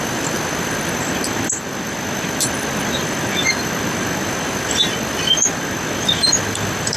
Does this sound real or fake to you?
fake